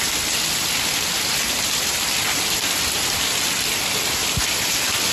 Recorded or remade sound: remade